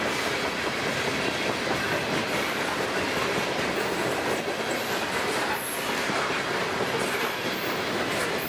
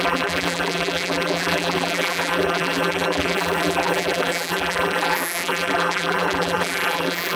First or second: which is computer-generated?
second